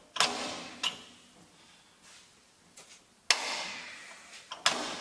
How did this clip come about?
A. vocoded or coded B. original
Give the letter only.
B